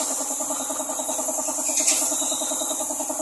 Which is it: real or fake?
real